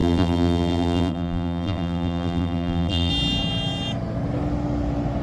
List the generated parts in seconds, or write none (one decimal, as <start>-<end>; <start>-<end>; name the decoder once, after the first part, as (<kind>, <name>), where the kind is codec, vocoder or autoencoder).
0.0-3.1 (vocoder, BigVGAN v2)